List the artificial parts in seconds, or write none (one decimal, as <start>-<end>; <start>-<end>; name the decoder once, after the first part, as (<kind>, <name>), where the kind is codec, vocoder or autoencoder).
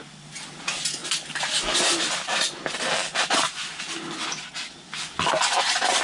none